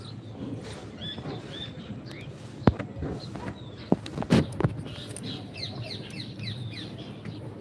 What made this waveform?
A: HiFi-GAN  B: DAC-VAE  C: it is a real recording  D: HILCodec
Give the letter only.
C